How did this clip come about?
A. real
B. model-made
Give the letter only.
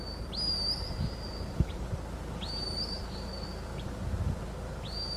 A